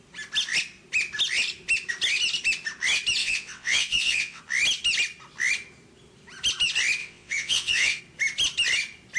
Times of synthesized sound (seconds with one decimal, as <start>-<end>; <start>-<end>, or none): 3.2-4.4; 7.0-8.0